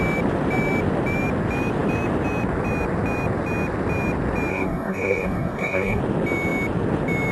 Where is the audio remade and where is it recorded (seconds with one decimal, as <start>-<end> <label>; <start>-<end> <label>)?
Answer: 0.0-4.5 recorded; 4.5-6.0 remade; 6.0-7.3 recorded